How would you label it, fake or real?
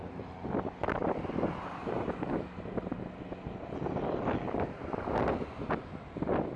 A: real